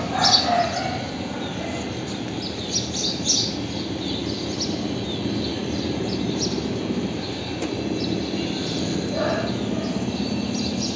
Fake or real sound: real